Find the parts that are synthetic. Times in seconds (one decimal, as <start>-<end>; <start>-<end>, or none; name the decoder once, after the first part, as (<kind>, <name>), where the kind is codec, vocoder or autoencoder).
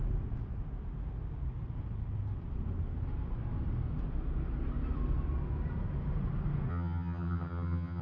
6.7-8.0 (vocoder, HiFi-GAN)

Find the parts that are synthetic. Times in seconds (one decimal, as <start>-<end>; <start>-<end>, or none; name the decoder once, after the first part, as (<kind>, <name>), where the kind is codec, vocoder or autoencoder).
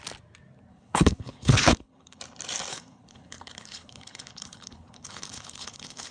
0.7-2.2 (codec, HILCodec); 2.7-6.1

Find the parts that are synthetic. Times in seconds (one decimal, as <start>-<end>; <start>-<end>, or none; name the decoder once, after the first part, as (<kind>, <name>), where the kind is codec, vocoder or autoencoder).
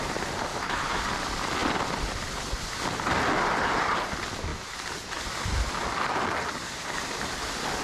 0.5-1.0 (autoencoder, DAC-VAE)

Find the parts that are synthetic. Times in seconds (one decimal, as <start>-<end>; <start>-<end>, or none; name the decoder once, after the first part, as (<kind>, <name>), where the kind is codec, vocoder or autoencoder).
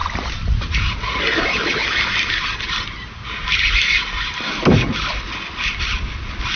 none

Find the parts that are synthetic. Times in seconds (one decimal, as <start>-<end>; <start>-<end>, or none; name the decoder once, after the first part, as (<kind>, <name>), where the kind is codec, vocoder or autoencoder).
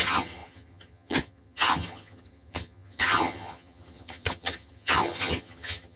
0.0-6.0 (vocoder, HiFi-GAN)